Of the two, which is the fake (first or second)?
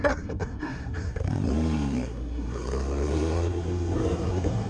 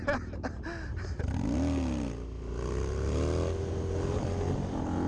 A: first